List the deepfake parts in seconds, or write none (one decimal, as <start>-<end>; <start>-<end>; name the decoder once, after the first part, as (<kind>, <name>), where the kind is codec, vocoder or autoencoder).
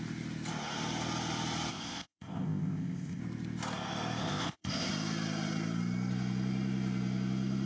1.7-3.2 (codec, ZipCodec); 4.2-4.9